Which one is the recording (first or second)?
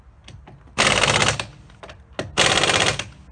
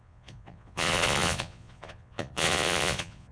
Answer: first